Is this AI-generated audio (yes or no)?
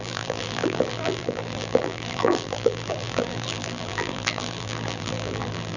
yes